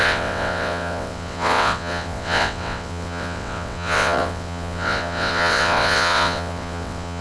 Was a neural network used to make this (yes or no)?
yes